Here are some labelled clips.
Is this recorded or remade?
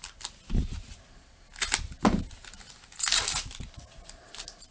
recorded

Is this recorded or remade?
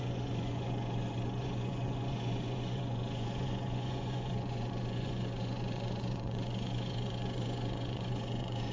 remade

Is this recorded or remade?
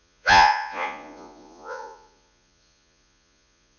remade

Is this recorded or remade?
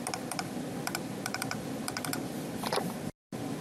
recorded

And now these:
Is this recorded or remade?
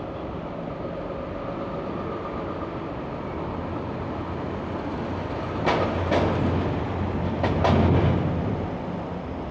recorded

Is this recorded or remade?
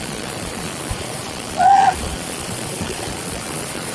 remade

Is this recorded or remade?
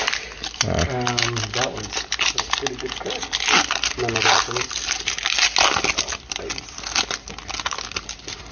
recorded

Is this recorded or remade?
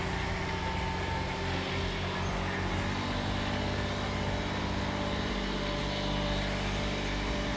recorded